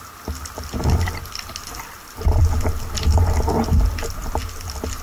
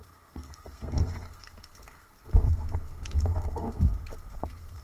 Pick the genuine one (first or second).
first